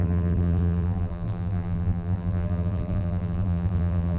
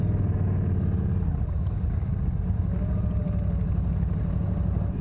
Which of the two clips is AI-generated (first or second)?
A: first